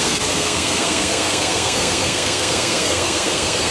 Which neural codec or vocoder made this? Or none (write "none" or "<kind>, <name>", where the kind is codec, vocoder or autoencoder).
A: codec, SNAC